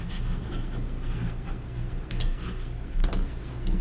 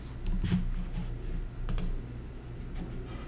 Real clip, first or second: second